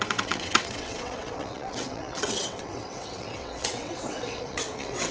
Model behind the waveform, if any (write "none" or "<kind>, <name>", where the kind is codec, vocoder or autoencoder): vocoder, WaveNeXt